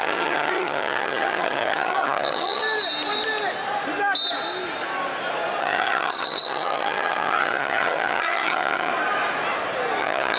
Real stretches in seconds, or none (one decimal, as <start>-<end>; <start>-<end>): 2.6-5.6; 8.9-10.0